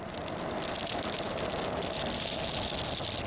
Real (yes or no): yes